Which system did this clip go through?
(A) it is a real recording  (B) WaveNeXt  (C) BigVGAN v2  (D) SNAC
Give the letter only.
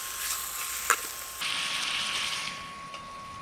A